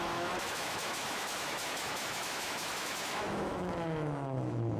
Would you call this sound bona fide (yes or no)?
no